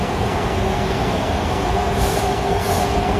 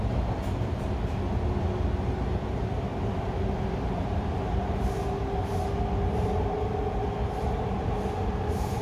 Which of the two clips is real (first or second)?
second